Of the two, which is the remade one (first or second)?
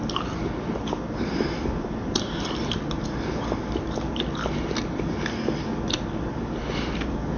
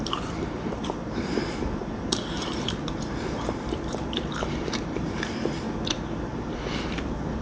second